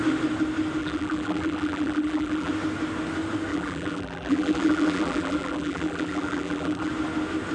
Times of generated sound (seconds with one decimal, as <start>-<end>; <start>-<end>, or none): 0.8-2.5; 3.5-6.9